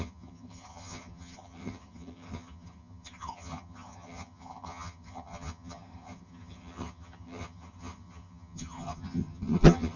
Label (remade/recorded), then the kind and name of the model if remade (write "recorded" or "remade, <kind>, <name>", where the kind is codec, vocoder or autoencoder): remade, vocoder, HiFi-GAN